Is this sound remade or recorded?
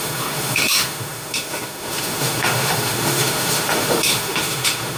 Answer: remade